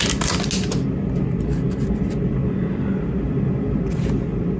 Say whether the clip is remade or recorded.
recorded